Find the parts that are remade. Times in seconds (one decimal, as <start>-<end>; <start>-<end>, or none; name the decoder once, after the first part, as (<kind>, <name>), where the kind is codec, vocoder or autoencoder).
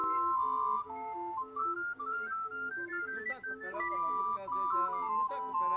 0.0-2.9 (codec, DAC); 3.4-4.2